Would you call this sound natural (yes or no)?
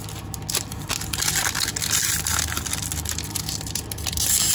yes